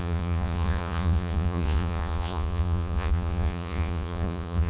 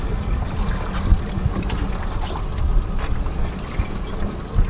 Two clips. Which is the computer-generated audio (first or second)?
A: first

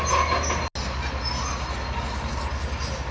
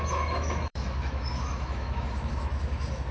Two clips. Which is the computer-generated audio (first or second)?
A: second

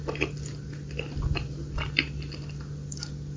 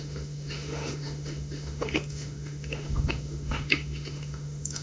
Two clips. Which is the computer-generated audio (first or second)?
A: second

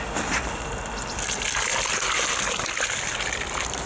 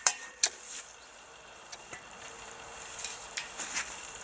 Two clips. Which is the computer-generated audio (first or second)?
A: second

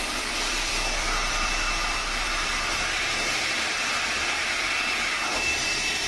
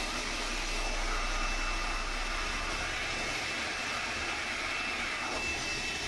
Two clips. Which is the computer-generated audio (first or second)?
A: first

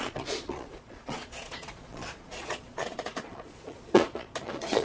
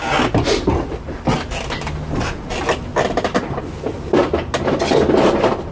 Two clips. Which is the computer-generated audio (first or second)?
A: first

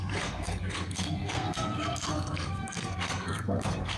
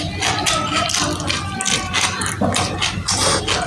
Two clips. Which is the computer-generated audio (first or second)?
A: first